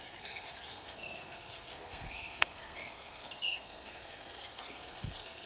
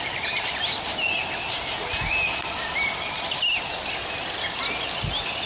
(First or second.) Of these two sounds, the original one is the second